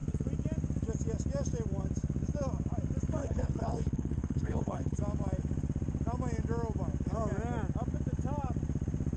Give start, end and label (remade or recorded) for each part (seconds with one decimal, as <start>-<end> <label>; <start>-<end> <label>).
0.0-3.2 recorded; 3.2-5.0 remade; 5.0-9.2 recorded